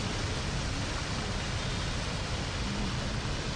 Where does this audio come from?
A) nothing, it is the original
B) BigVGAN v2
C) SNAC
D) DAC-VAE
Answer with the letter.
A